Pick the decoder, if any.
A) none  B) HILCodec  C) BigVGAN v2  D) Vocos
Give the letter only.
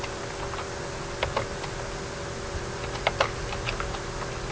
A